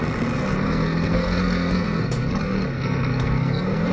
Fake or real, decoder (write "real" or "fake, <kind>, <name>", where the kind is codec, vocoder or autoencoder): fake, codec, SNAC